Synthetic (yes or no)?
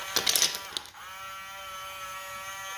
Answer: no